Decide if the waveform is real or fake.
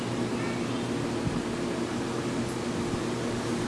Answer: real